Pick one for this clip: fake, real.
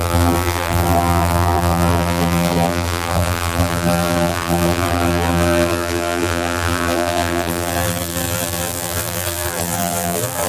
fake